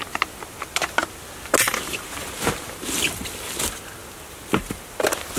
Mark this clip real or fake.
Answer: real